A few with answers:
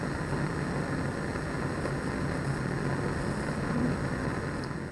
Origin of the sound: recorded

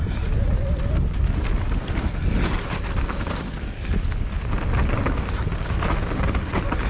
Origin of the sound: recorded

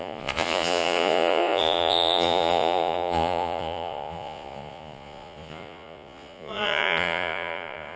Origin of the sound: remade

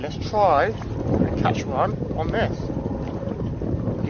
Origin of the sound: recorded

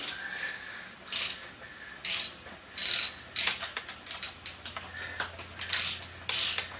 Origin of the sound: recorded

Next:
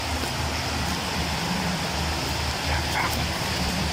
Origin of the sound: recorded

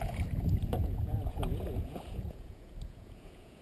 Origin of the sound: remade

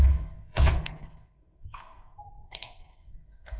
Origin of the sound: remade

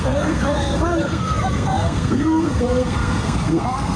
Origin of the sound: remade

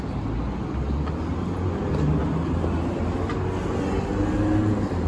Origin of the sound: recorded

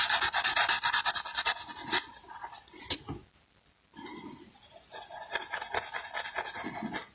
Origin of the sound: recorded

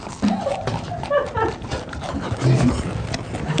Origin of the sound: recorded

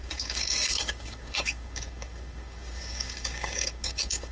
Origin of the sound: remade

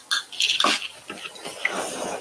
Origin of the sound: recorded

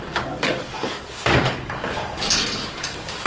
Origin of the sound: remade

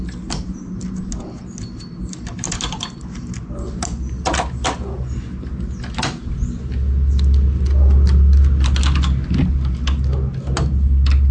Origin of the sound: recorded